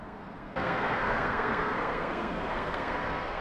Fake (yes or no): yes